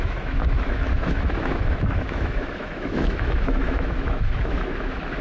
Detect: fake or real fake